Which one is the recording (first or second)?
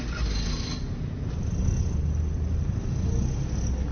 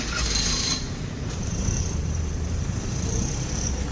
first